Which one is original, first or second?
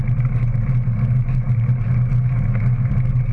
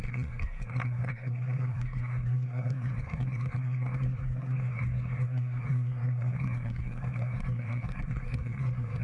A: first